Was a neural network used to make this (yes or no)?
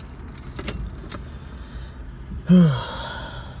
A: no